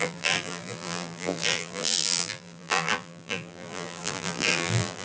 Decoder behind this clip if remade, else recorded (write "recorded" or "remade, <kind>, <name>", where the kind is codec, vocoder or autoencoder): remade, vocoder, BigVGAN v2